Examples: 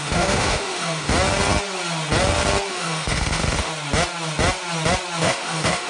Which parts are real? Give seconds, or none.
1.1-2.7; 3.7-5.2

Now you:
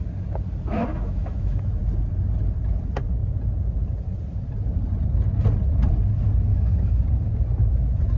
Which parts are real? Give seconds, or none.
0.0-0.9; 1.8-6.5; 7.0-8.2

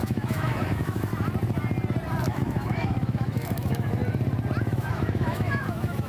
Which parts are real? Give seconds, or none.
1.1-2.2; 4.0-4.6